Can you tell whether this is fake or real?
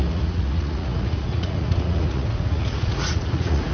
fake